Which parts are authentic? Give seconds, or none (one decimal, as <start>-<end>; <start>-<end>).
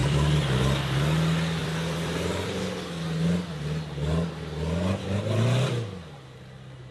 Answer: 0.6-1.6; 2.6-6.9